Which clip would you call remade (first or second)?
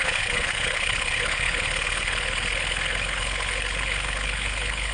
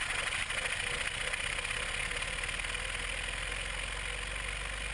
first